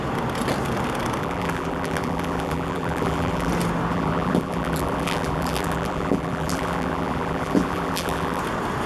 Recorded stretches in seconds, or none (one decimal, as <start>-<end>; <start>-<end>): 0.0-1.2; 3.5-3.9; 8.4-8.9

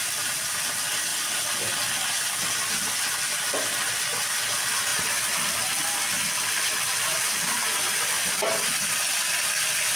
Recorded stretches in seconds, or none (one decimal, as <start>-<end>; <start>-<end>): 0.0-10.0

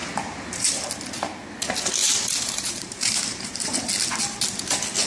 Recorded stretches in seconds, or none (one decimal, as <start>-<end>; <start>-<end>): 0.9-2.0; 3.9-5.1

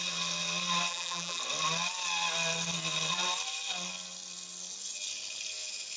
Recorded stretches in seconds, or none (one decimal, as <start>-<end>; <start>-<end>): 0.0-0.9; 1.4-6.0